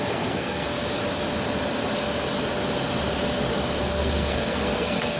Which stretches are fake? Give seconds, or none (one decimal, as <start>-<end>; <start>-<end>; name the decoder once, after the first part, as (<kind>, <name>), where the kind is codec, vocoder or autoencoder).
0.0-0.7 (codec, SNAC); 3.8-5.2